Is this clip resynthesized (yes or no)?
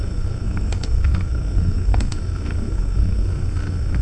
yes